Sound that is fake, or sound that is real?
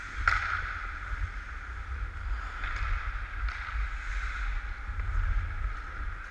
real